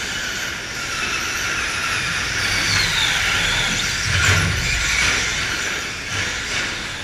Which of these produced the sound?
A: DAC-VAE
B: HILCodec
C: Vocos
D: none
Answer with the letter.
D